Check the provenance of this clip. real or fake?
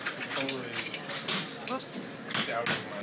real